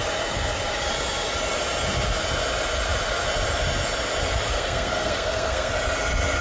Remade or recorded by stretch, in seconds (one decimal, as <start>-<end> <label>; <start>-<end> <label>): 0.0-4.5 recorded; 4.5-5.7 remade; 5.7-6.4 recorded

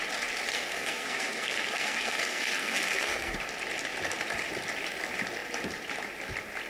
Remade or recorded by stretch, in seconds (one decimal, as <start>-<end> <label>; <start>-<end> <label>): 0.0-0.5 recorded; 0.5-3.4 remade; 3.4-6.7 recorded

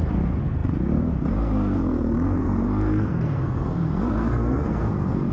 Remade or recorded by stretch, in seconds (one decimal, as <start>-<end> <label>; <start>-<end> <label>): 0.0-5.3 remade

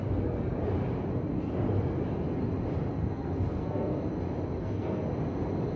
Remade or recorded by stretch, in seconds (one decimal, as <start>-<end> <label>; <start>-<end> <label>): 0.0-3.0 recorded; 3.0-4.0 remade; 4.0-4.6 recorded; 4.6-5.1 remade; 5.1-5.8 recorded